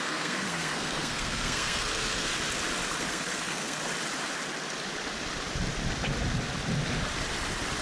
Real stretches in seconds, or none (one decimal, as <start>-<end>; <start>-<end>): 2.3-3.0; 3.8-7.8